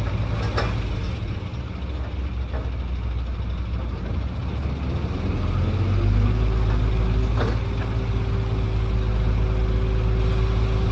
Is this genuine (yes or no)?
yes